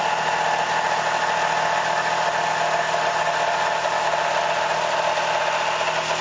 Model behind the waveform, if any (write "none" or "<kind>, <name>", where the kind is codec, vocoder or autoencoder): none